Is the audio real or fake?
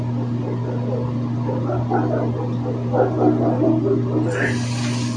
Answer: real